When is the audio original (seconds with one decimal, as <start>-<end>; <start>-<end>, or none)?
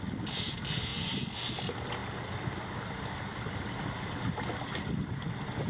0.0-5.7